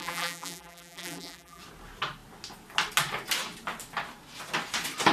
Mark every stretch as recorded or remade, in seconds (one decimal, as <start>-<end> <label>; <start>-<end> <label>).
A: 0.0-1.6 remade; 1.6-5.1 recorded